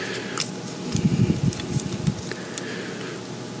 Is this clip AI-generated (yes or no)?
no